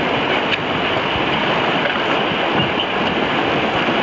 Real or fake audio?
real